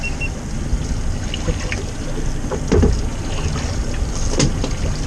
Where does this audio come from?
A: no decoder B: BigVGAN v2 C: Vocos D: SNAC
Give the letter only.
A